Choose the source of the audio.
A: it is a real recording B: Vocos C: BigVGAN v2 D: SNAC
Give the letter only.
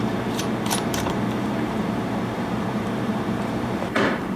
C